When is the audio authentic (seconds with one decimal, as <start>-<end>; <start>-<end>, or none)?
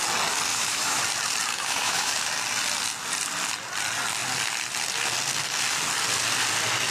0.0-0.5; 1.0-1.5; 2.1-6.9